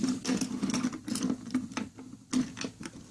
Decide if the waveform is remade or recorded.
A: recorded